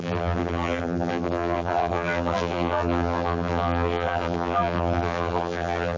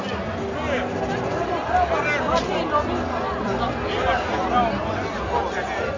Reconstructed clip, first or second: first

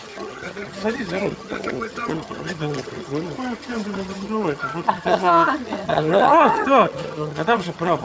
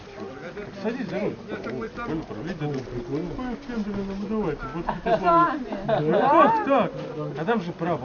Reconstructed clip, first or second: first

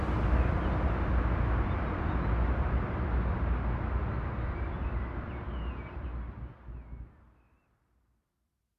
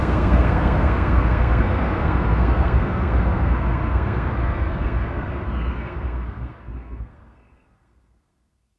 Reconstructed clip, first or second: second